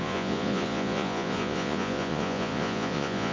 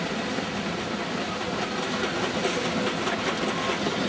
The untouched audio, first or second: second